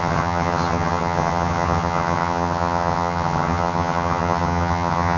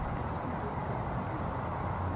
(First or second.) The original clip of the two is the second